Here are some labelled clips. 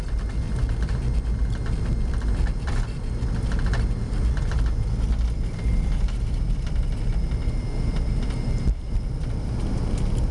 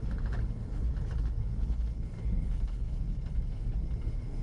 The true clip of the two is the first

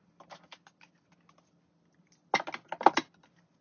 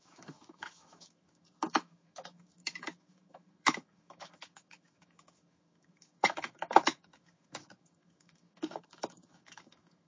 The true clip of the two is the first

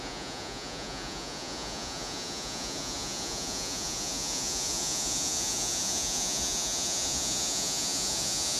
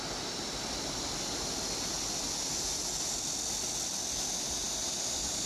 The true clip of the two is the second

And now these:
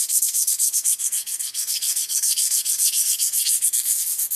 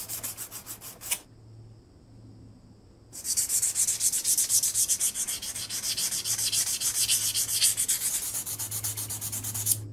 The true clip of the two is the second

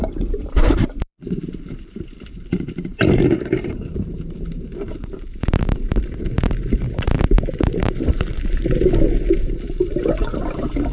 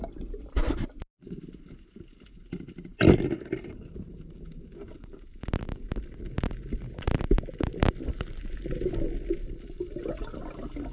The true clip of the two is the second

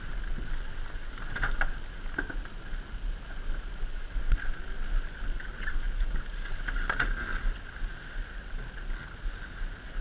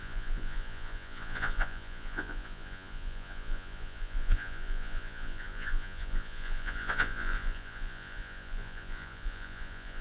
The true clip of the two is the first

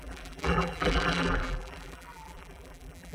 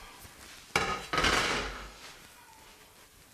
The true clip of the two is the second